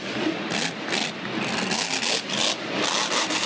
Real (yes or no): yes